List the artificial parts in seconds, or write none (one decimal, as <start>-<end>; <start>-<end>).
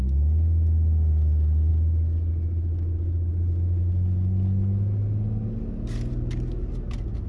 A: none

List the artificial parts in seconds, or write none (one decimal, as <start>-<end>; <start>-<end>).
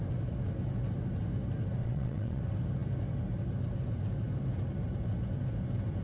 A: 1.8-2.4